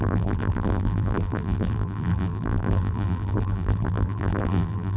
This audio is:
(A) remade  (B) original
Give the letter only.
A